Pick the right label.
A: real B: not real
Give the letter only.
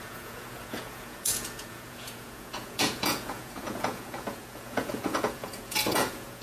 B